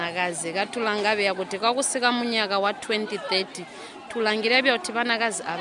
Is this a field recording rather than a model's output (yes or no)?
yes